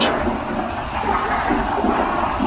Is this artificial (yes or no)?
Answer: no